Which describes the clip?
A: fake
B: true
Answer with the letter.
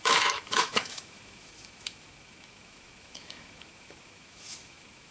A